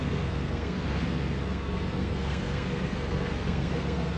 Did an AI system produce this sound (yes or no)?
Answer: yes